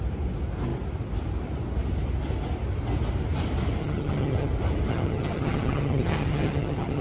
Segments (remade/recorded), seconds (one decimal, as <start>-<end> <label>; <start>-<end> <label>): 0.0-3.8 recorded; 3.8-4.5 remade; 4.5-4.9 recorded; 4.9-7.0 remade